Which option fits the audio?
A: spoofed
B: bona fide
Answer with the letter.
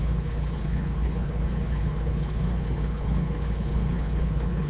A